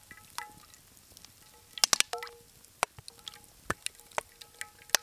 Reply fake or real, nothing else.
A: real